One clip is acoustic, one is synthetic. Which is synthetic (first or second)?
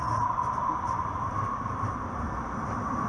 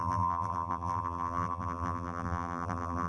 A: second